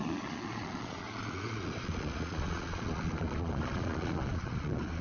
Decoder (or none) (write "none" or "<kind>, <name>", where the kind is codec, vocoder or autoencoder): vocoder, Vocos